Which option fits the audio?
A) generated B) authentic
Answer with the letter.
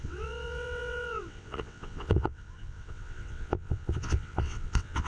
A